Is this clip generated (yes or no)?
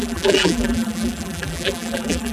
yes